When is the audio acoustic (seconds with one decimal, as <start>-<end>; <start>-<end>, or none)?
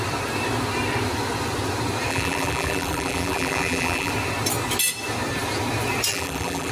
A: 0.0-2.1; 4.1-6.1